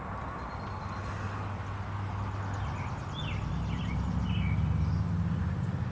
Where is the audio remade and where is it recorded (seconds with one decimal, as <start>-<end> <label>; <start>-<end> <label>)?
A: 0.0-5.9 recorded